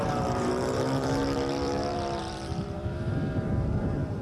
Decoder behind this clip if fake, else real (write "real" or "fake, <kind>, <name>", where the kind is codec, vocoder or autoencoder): fake, vocoder, BigVGAN v2